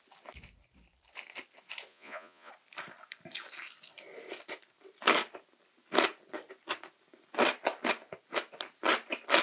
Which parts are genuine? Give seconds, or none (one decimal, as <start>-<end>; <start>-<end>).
0.0-1.9; 2.5-9.4